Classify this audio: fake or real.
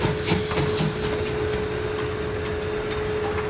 real